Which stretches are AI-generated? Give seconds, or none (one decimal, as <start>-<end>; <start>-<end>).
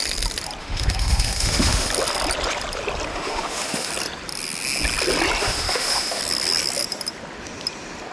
0.6-1.9; 3.1-3.9; 5.4-6.2